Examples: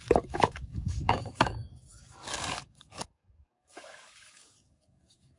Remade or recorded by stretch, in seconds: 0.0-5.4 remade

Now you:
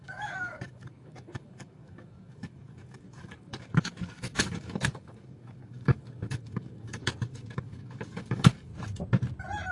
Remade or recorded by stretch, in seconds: 0.0-8.7 remade; 8.7-9.7 recorded

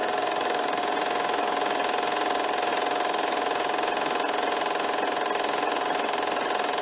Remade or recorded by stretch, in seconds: 0.0-0.8 remade; 0.8-6.8 recorded

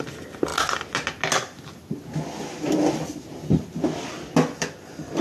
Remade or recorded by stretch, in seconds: 0.0-5.2 recorded

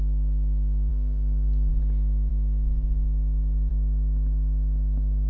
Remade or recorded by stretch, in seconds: 0.0-0.9 recorded; 0.9-1.7 remade; 1.7-5.3 recorded

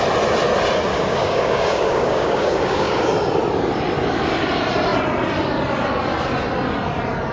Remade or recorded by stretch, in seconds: 0.0-0.9 recorded; 0.9-3.1 remade; 3.1-7.3 recorded

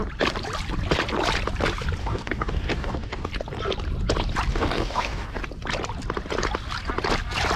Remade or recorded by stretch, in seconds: 0.0-2.0 recorded; 2.0-3.3 remade; 3.3-4.5 recorded; 4.5-5.4 remade; 5.4-7.6 recorded